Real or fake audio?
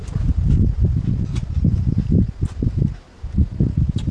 real